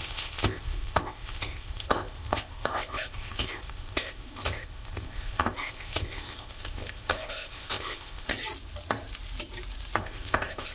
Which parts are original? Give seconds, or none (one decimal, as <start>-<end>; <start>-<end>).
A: 8.3-10.0